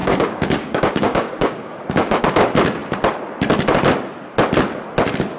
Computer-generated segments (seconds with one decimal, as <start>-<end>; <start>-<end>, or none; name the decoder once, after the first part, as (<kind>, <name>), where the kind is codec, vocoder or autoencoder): 0.0-2.2 (codec, DAC)